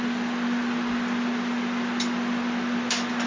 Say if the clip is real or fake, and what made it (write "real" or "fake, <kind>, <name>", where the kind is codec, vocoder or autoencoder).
real